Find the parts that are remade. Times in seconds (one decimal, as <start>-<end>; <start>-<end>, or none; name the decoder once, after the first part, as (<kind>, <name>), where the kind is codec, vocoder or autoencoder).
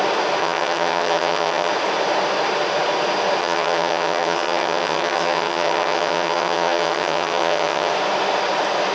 0.4-1.7 (vocoder, HiFi-GAN); 3.4-7.9